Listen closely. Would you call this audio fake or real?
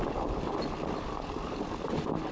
real